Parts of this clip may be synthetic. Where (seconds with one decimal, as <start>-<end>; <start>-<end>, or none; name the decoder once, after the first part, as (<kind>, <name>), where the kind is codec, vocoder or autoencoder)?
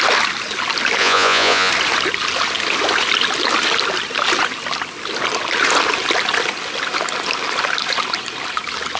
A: 1.0-1.7 (vocoder, Vocos)